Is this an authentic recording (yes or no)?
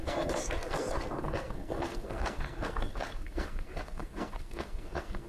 no